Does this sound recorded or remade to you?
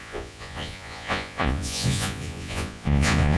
remade